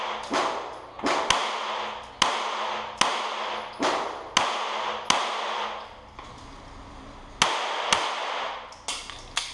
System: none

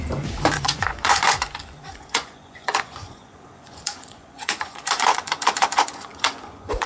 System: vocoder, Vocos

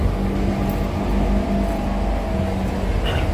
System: none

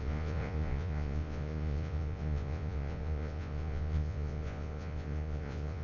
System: vocoder, Vocos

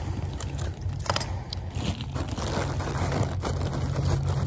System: none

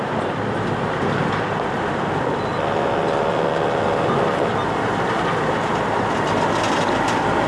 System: none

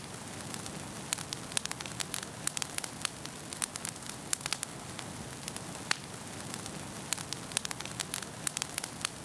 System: none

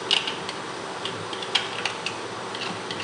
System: none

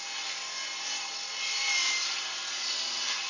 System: none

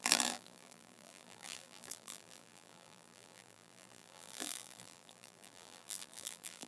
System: vocoder, BigVGAN v2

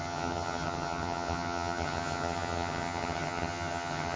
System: vocoder, HiFi-GAN